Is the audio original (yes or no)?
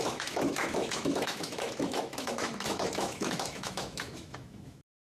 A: no